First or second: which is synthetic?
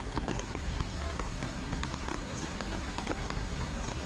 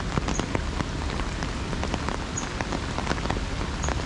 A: first